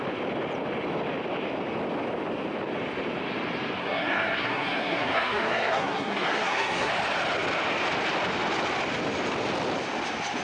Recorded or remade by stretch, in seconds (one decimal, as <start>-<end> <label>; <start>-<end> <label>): 0.0-3.8 recorded; 3.8-6.9 remade; 6.9-10.4 recorded